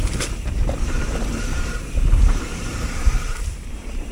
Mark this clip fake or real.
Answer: fake